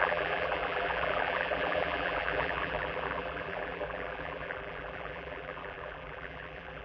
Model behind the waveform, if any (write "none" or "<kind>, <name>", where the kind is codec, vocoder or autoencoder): vocoder, BigVGAN v2